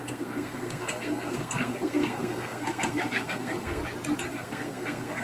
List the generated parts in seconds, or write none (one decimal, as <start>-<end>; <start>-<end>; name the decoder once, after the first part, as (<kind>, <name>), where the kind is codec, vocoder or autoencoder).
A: 0.0-3.8 (codec, SNAC); 4.3-5.2